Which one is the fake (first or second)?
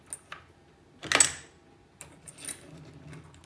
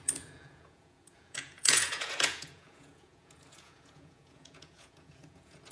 second